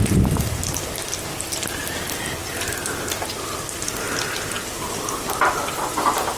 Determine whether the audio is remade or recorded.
recorded